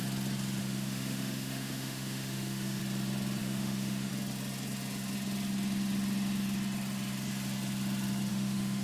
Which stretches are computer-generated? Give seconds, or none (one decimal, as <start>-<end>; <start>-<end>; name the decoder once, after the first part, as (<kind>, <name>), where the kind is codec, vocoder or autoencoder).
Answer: 0.6-2.8 (autoencoder, DAC-VAE); 3.4-4.1; 8.3-8.8